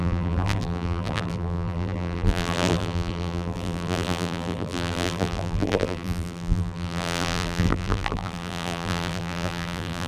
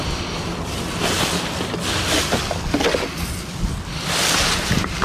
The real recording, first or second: second